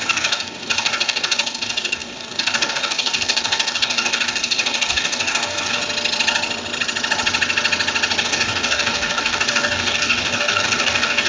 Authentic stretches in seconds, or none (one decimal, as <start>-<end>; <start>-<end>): 5.8-8.2